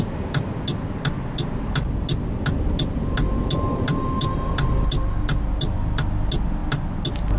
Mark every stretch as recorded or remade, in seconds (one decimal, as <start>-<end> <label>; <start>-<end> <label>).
0.0-7.4 recorded